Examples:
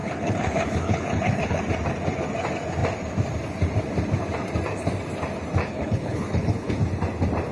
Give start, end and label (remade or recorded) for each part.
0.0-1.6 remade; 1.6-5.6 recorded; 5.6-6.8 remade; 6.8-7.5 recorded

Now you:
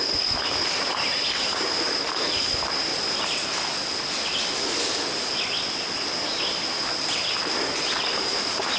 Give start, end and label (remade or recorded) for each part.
0.0-2.9 remade; 2.9-8.1 recorded; 8.1-8.8 remade

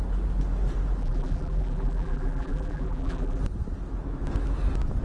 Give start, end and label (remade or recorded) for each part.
0.0-1.0 recorded; 1.0-3.4 remade; 3.4-5.0 recorded